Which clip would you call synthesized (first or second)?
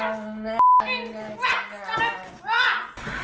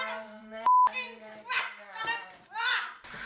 second